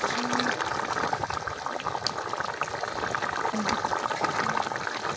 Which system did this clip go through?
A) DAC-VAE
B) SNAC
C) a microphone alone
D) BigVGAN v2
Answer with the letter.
C